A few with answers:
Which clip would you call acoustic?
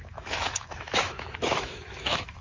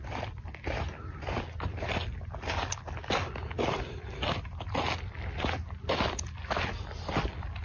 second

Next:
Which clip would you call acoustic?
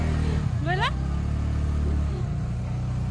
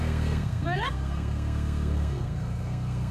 first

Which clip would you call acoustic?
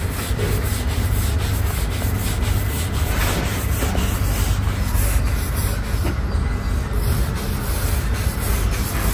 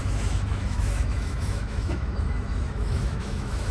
first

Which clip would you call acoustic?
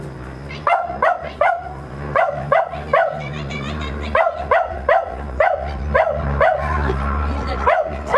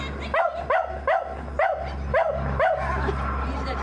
second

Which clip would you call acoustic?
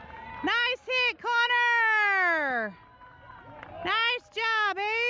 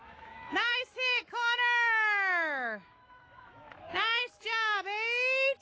first